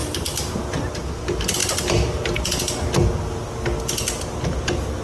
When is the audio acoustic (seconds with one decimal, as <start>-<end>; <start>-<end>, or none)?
0.6-5.0